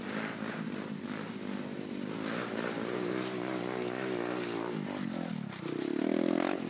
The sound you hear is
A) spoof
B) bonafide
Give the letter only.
B